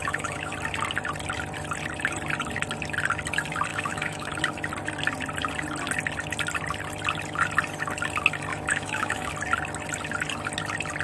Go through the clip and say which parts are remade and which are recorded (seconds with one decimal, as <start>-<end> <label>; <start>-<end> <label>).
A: 0.0-0.5 remade; 0.5-3.7 recorded; 3.7-4.3 remade; 4.3-8.5 recorded; 8.5-9.3 remade; 9.3-11.0 recorded